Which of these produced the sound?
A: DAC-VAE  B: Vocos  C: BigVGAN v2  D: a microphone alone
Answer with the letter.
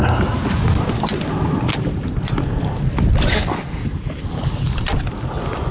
D